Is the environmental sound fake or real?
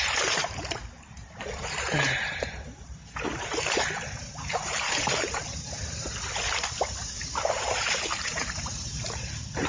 fake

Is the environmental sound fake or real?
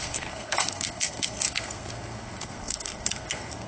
fake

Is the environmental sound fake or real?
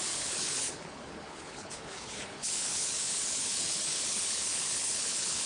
fake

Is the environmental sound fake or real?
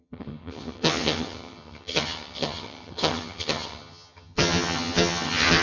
fake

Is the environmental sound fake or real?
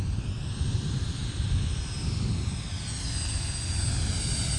real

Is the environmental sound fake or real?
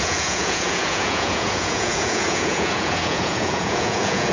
fake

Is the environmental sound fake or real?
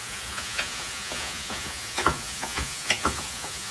fake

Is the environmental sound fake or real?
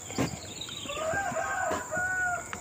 real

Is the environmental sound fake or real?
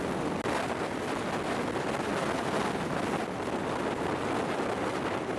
real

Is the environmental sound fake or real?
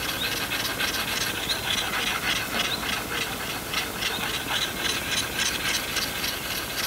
real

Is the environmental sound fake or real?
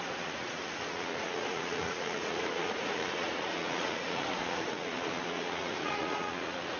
fake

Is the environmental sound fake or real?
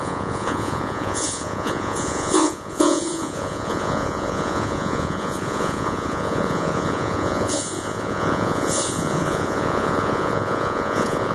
fake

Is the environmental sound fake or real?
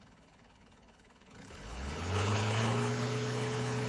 fake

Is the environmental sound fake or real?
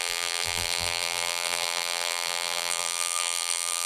fake